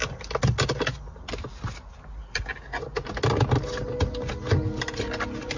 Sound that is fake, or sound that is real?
real